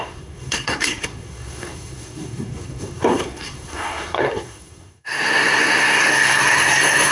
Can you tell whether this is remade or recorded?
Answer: remade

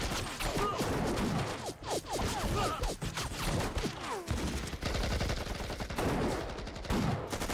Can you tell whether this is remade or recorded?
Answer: recorded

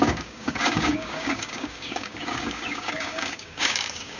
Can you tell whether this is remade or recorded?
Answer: remade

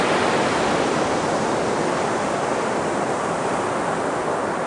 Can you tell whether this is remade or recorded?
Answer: recorded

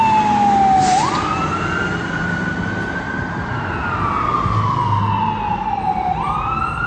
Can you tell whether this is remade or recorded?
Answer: recorded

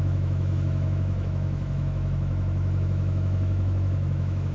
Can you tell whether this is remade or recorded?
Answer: remade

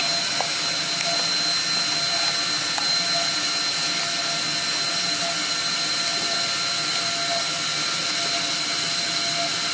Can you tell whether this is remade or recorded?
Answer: recorded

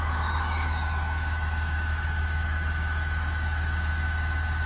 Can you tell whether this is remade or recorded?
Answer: remade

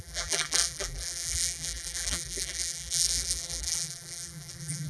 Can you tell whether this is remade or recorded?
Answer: remade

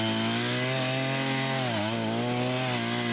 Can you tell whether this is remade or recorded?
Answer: recorded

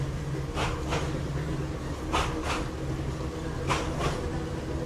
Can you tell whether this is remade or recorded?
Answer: recorded